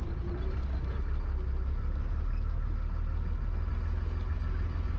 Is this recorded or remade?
recorded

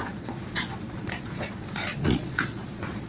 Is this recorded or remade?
remade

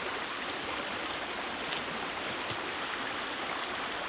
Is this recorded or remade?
recorded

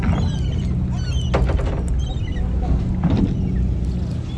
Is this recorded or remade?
recorded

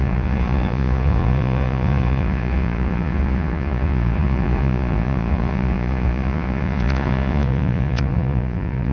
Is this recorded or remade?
remade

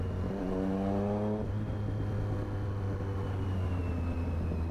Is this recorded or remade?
recorded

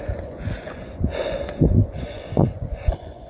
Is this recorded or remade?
remade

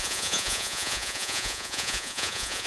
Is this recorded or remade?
remade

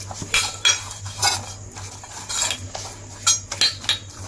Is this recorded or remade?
recorded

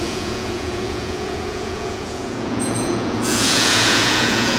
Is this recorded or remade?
remade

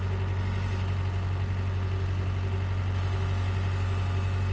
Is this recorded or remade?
recorded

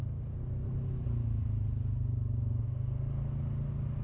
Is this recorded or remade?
recorded